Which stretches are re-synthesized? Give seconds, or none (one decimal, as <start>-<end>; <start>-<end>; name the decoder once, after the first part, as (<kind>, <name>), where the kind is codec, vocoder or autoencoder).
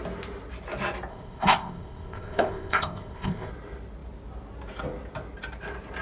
1.1-3.5 (codec, ZipCodec)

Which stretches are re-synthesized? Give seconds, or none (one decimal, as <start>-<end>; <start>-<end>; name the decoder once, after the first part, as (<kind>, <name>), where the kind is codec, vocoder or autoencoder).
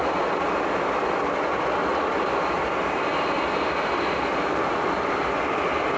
0.0-0.7 (vocoder, BigVGAN v2); 1.8-5.4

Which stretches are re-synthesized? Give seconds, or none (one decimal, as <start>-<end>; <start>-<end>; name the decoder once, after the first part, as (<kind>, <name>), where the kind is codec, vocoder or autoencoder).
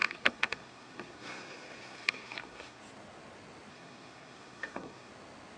0.0-2.8 (codec, SNAC); 3.7-5.1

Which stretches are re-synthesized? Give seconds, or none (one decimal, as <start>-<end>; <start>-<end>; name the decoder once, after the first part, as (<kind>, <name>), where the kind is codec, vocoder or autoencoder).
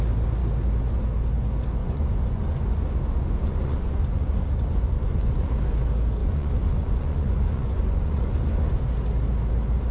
1.8-5.5 (vocoder, Vocos); 6.2-8.8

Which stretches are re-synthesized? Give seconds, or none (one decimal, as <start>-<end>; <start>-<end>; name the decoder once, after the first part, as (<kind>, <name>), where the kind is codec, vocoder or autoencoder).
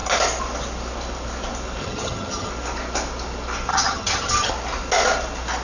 1.8-2.5 (vocoder, HiFi-GAN); 3.7-4.5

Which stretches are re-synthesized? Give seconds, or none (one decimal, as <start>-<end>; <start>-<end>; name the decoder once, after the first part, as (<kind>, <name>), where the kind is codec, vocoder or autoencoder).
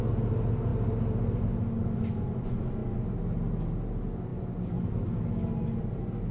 none